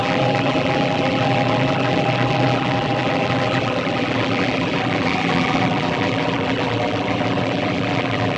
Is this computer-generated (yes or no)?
yes